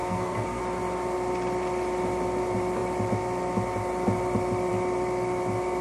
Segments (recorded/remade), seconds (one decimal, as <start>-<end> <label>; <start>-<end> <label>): 0.0-0.6 remade; 0.6-5.8 recorded